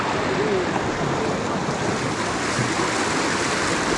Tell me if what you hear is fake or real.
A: real